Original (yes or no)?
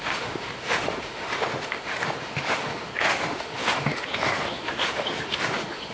no